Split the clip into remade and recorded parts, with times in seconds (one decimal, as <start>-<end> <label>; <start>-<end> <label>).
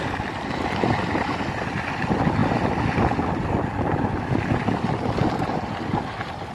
0.0-6.5 recorded